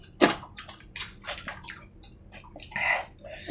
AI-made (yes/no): no